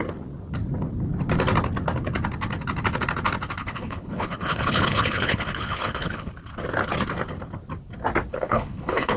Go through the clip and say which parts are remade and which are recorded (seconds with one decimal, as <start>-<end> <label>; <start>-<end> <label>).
0.0-3.6 recorded; 3.6-6.3 remade; 6.3-8.3 recorded; 8.3-9.2 remade